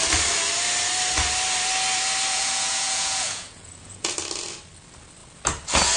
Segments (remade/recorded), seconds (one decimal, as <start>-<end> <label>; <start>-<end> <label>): 0.0-2.3 recorded; 2.3-4.1 remade; 4.1-6.0 recorded